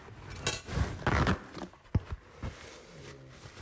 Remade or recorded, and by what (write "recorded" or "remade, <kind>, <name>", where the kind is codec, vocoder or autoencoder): recorded